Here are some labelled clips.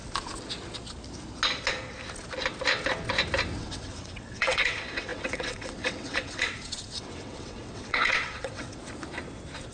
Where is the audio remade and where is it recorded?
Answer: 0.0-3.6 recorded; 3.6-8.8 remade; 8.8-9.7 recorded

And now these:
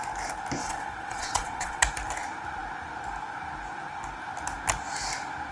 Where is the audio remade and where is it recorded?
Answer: 0.0-0.6 recorded; 0.6-1.8 remade; 1.8-5.5 recorded

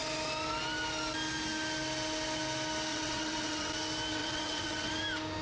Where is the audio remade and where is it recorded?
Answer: 0.0-2.9 recorded; 2.9-3.7 remade; 3.7-4.2 recorded; 4.2-4.9 remade; 4.9-5.4 recorded

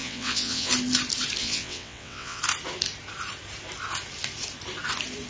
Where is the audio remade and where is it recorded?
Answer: 0.0-0.7 remade; 0.7-1.4 recorded; 1.4-2.4 remade; 2.4-5.3 recorded

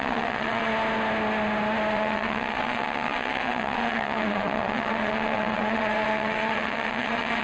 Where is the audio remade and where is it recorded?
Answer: 0.0-0.7 remade; 0.7-1.9 recorded; 1.9-7.4 remade